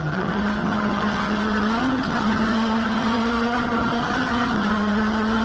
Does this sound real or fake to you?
fake